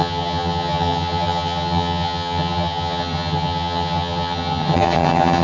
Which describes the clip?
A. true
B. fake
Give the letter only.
B